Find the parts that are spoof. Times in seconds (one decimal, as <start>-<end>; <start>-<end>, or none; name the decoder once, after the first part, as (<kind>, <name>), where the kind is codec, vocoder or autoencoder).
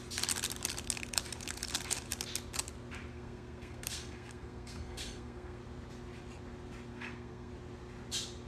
3.1-5.6 (codec, SNAC); 6.9-7.5